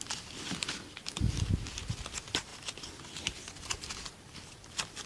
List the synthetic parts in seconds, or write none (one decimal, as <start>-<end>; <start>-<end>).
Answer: none